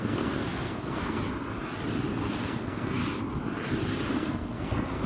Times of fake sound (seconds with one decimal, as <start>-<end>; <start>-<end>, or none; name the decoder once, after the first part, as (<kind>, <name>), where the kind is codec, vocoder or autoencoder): 0.0-1.2 (codec, SNAC); 2.4-3.0; 4.1-5.1